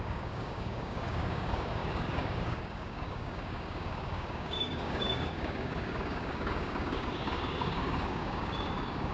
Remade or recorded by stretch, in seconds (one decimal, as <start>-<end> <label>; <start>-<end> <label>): 0.0-9.1 remade